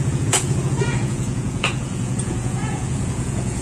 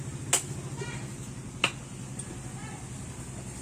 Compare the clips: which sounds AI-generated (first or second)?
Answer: first